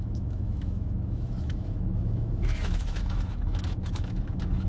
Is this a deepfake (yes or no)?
yes